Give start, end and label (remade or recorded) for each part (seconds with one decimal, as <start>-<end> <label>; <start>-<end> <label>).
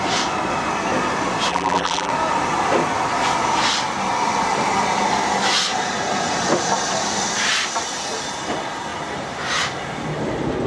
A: 0.0-1.5 recorded; 1.5-2.1 remade; 2.1-10.7 recorded